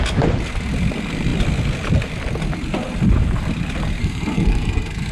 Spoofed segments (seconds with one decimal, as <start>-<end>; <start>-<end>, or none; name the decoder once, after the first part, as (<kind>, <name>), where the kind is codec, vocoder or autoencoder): 4.0-5.1 (codec, SNAC)